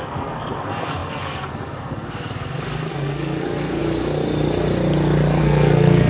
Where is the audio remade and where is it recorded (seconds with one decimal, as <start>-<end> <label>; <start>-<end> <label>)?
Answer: 0.0-3.8 remade; 3.8-5.4 recorded; 5.4-6.1 remade

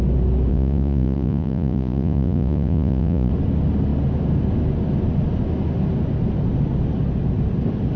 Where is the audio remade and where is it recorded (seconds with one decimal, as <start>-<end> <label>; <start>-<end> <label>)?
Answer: 0.0-0.5 recorded; 0.5-3.3 remade; 3.3-8.0 recorded

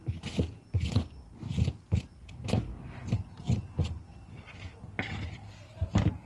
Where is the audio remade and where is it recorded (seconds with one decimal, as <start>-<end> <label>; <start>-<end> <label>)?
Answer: 0.0-6.3 recorded

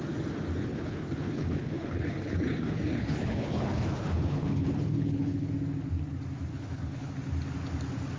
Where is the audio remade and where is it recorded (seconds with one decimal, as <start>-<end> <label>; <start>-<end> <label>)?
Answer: 0.0-0.6 recorded; 0.6-5.5 remade; 5.5-6.5 recorded; 6.5-7.1 remade; 7.1-8.2 recorded

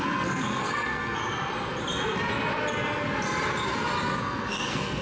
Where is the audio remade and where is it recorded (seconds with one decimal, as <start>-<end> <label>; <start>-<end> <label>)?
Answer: 0.0-1.2 remade; 1.2-4.2 recorded; 4.2-5.0 remade

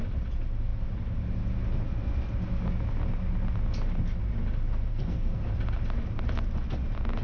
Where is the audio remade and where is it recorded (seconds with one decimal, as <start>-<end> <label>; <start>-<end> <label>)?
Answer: 0.0-4.9 recorded; 4.9-5.4 remade; 5.4-7.2 recorded